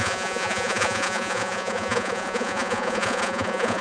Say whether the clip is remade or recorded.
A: remade